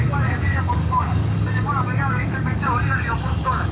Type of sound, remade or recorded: remade